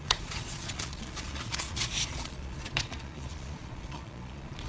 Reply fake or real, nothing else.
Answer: fake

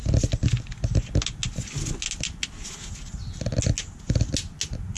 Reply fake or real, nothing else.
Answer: real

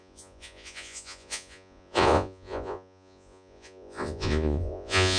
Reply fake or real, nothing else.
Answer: fake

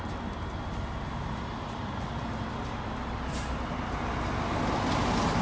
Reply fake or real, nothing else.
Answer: real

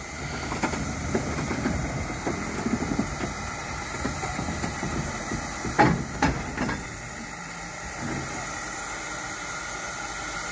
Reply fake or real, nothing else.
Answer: real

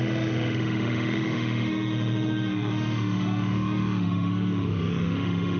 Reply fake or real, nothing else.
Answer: fake